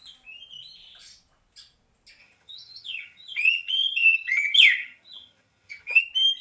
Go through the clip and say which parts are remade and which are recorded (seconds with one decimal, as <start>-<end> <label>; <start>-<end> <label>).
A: 0.0-2.2 recorded; 2.2-6.0 remade; 6.0-6.4 recorded